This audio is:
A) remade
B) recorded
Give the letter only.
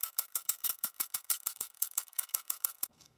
A